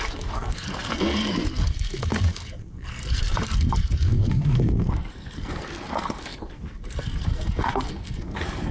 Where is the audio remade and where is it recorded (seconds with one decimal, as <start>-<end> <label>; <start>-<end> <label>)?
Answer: 0.0-8.7 remade